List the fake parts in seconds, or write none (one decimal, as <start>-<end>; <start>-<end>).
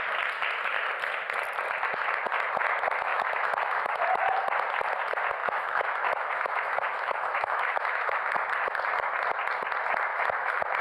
3.1-4.0; 5.4-8.3; 10.1-10.8